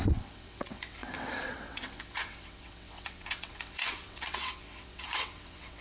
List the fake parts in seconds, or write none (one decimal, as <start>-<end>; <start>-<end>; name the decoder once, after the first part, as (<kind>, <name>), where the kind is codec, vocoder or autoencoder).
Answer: 0.0-5.8 (vocoder, WaveNeXt)

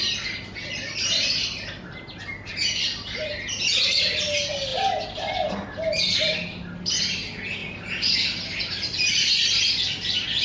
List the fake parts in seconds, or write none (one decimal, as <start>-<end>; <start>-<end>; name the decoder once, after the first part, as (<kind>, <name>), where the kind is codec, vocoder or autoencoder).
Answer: 7.6-9.5 (vocoder, BigVGAN v2)

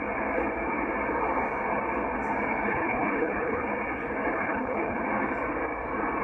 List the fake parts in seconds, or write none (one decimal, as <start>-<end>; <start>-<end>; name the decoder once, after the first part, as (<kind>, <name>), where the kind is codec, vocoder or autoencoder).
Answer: 2.7-3.6 (codec, HILCodec); 4.4-5.0

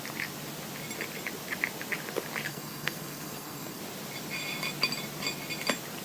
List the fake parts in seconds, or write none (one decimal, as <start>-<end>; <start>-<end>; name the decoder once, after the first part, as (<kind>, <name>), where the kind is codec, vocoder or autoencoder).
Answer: 2.5-3.8 (codec, SNAC)

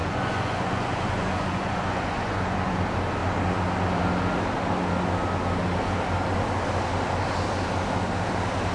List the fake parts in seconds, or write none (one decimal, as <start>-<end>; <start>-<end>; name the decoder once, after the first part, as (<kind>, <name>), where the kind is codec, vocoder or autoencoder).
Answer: 0.0-2.8 (vocoder, Vocos)